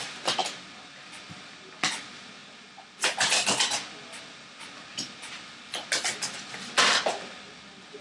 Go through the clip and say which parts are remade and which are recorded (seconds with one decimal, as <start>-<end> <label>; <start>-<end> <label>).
0.0-8.0 recorded